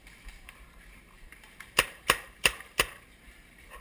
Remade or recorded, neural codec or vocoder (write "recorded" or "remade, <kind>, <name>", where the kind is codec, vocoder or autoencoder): remade, vocoder, BigVGAN v2